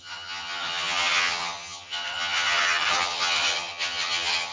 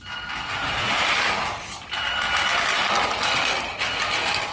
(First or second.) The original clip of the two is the second